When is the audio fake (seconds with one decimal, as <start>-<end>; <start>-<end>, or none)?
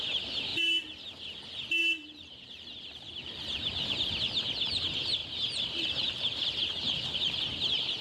0.5-1.0; 1.8-4.1; 5.2-7.4